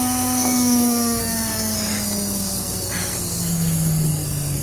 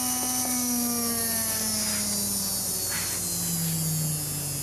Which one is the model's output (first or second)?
first